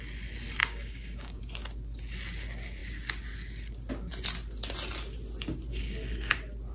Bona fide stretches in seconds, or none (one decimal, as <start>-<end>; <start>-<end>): 0.0-0.6; 1.4-5.7; 6.3-6.7